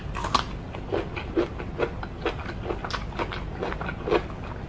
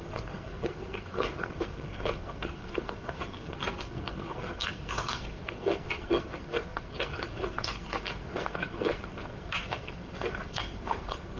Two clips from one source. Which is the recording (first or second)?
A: first